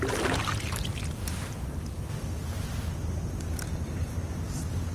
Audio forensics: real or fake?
real